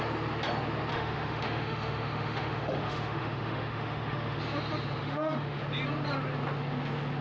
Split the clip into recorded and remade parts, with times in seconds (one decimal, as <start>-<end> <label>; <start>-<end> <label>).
0.0-0.9 recorded; 0.9-4.4 remade; 4.4-5.0 recorded; 5.0-5.6 remade; 5.6-7.2 recorded